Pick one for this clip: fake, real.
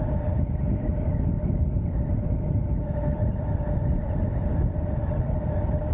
real